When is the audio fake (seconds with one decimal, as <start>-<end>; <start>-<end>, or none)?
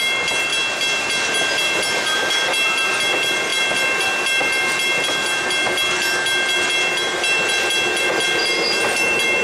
none